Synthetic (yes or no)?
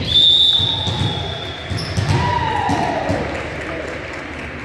no